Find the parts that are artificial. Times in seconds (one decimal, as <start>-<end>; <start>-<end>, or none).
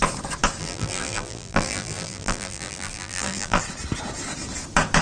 0.6-3.6